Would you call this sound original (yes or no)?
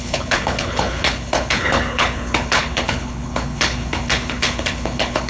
no